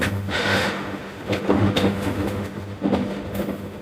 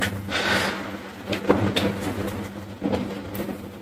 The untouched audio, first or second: second